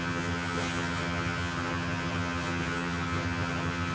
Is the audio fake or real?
fake